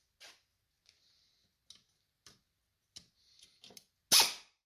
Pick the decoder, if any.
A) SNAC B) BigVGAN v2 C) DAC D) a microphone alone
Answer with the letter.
D